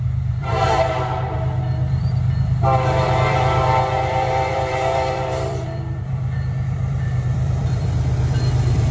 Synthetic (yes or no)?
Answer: yes